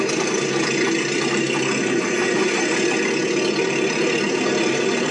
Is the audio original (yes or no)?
yes